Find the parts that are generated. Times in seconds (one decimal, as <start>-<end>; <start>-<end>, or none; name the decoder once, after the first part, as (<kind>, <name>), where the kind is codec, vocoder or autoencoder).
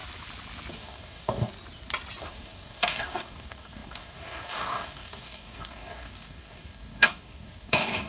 0.7-1.5 (codec, DAC); 2.2-8.1